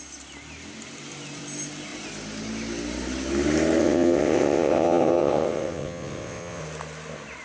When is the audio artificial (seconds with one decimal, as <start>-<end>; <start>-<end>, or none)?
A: 3.8-6.6